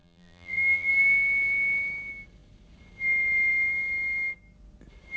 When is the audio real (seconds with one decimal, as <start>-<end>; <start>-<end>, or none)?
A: 0.9-5.2